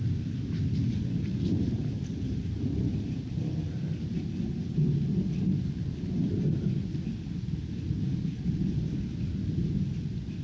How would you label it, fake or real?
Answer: real